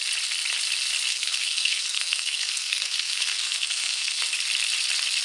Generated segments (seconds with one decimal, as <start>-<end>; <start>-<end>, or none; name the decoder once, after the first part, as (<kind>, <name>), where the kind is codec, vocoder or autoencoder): 1.1-4.2 (codec, SNAC)